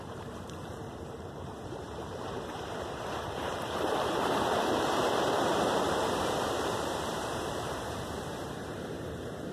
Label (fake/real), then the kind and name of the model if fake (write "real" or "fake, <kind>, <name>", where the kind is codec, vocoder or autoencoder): fake, vocoder, BigVGAN v2